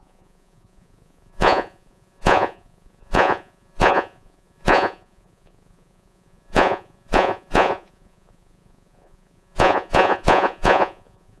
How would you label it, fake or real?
fake